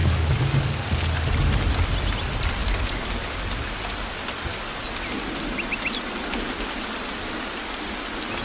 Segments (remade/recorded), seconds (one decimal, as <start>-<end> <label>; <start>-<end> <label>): 0.0-0.8 remade; 0.8-8.4 recorded